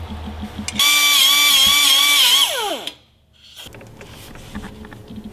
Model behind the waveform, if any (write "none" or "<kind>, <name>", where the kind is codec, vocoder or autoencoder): none